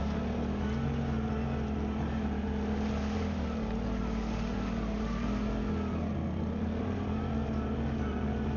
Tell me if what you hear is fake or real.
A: real